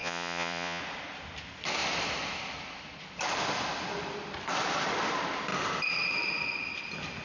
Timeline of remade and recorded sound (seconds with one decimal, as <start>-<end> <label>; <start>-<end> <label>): 0.0-0.8 remade; 0.8-7.2 recorded